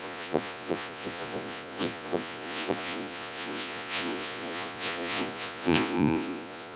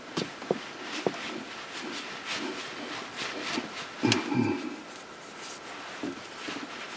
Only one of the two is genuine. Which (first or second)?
second